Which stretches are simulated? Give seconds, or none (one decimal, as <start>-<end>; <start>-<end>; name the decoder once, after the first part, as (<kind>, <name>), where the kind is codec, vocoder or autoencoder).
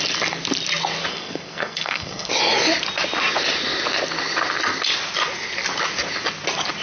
1.1-2.3 (codec, SNAC)